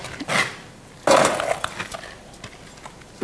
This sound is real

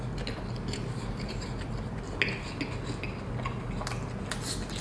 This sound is real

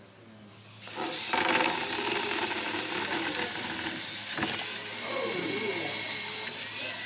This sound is real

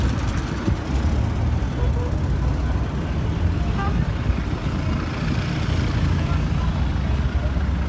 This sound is real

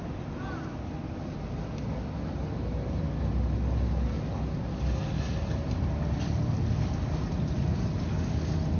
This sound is real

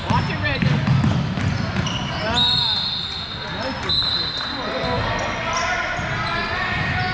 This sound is real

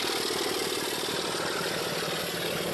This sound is real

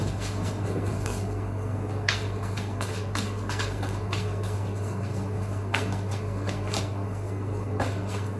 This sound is fake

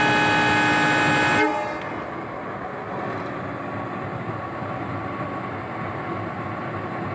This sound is real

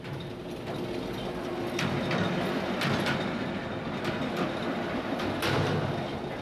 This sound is real